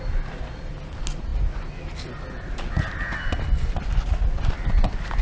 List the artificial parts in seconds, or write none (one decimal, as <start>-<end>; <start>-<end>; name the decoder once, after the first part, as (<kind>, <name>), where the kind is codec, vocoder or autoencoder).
none